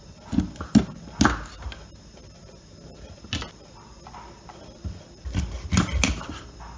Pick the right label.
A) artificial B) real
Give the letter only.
B